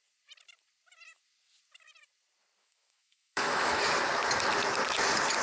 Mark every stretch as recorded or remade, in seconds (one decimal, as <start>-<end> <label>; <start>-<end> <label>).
0.0-2.6 recorded; 2.6-3.8 remade; 3.8-5.4 recorded